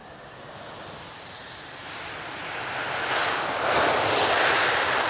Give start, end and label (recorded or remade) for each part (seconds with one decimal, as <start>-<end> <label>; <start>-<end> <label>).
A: 0.0-0.5 remade; 0.5-1.8 recorded; 1.8-5.1 remade